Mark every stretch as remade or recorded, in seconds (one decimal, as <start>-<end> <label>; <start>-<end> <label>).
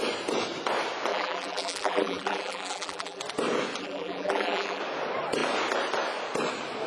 0.0-1.1 recorded; 1.1-3.2 remade; 3.2-3.8 recorded; 3.8-4.8 remade; 4.8-6.9 recorded